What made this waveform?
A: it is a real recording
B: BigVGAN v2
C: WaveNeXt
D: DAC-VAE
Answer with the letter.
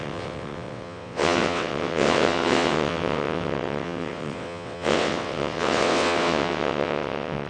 C